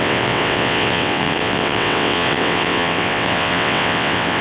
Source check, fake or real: fake